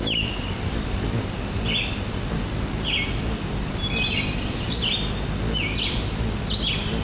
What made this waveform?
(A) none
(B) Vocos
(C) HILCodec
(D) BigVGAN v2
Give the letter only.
A